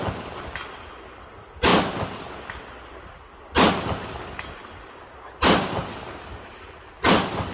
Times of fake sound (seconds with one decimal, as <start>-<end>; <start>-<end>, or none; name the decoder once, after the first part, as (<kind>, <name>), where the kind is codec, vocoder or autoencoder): none